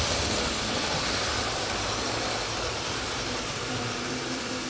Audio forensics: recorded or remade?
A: recorded